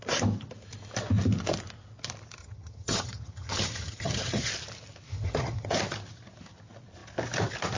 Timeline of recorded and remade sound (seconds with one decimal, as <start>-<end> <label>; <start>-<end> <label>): 0.0-2.4 recorded; 2.4-4.5 remade; 4.5-5.1 recorded; 5.1-5.7 remade; 5.7-7.8 recorded